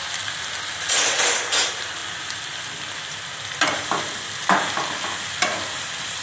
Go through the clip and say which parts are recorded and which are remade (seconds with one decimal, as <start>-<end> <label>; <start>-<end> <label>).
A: 0.0-6.2 recorded